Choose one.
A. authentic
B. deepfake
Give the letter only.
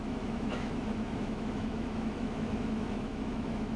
B